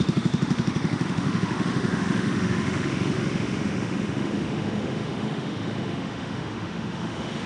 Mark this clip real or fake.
fake